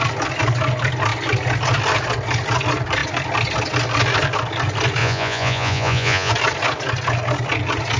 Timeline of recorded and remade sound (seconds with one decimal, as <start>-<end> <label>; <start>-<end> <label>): 0.0-5.0 recorded; 5.0-6.3 remade; 6.3-8.0 recorded